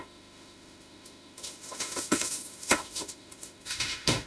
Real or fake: fake